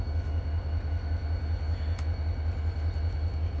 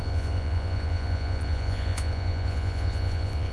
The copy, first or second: second